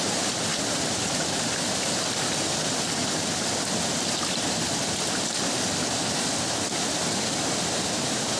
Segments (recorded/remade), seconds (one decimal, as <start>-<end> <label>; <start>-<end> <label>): 0.0-8.4 recorded